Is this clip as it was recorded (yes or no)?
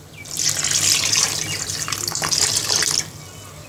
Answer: yes